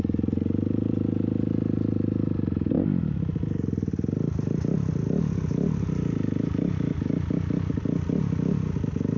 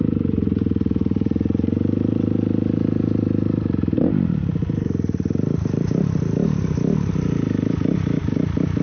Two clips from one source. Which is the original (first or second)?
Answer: first